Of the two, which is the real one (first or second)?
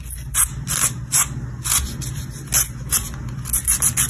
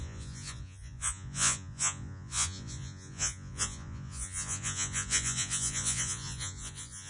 first